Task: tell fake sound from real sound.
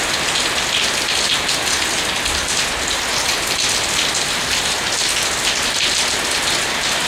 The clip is real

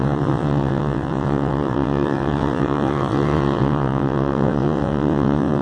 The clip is fake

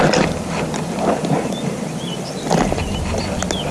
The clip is real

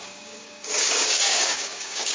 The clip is fake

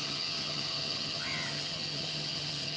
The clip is fake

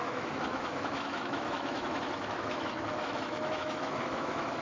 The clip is fake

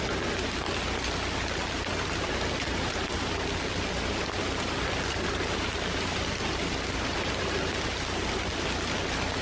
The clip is real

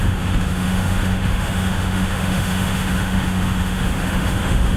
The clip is fake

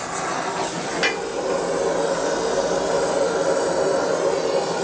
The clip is real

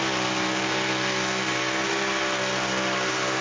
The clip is real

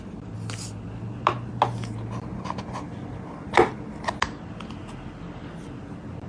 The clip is real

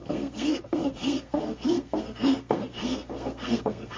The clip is fake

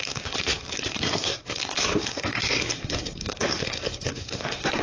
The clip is fake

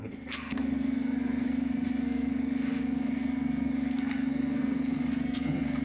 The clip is fake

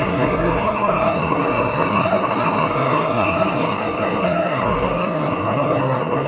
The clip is fake